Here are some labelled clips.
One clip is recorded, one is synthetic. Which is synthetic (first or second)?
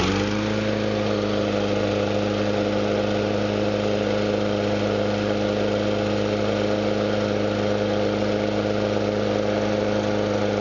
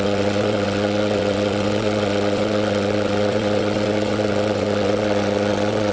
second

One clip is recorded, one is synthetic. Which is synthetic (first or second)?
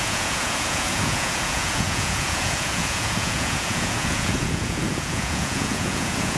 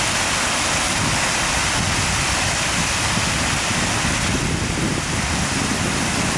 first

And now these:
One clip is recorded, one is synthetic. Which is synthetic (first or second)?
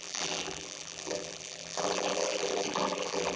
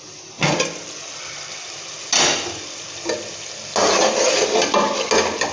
first